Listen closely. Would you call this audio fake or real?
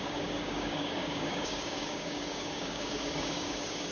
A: fake